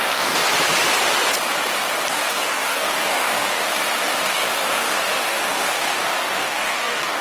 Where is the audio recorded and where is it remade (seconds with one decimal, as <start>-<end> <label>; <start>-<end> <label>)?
0.0-0.4 remade; 0.4-2.1 recorded; 2.1-3.6 remade; 3.6-4.2 recorded; 4.2-7.2 remade